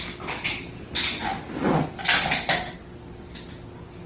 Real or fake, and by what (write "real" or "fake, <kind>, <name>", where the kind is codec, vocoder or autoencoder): real